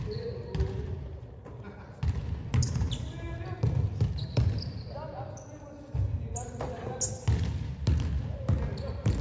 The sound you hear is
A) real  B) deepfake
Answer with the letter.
A